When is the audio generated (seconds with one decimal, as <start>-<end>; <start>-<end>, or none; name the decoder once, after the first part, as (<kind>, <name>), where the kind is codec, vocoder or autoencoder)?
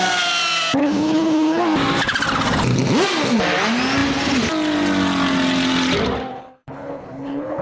0.8-1.6 (codec, HILCodec); 6.3-7.6